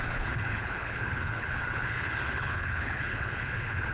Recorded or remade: remade